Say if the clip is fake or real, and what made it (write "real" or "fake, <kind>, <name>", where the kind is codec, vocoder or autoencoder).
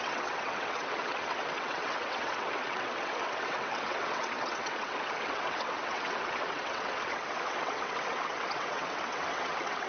fake, vocoder, WaveNeXt